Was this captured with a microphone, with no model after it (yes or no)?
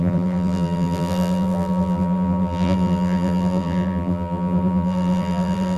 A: no